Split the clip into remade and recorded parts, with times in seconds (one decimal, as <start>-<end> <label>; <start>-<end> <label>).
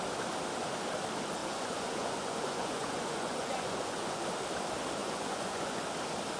0.0-1.4 recorded; 1.4-4.2 remade; 4.2-5.0 recorded; 5.0-5.8 remade; 5.8-6.4 recorded